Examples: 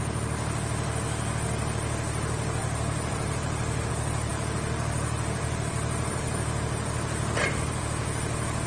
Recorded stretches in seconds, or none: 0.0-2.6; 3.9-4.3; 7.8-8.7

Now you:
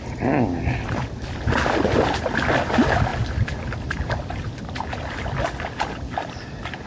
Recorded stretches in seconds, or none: 0.0-6.9

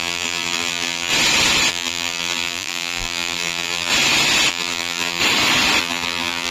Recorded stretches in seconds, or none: 1.1-1.7; 3.9-4.5; 5.2-5.8

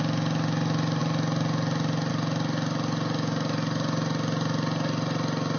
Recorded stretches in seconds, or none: 0.0-5.6

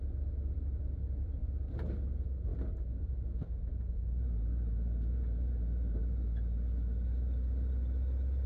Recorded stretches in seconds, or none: 0.0-1.4; 2.0-8.5

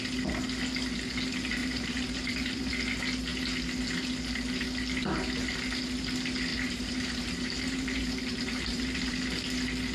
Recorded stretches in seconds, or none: 0.0-1.6; 2.7-6.5; 9.1-9.9

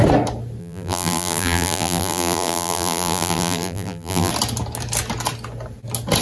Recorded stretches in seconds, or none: 0.0-0.6; 4.3-6.2

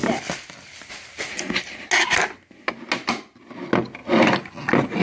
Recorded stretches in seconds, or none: 0.0-5.0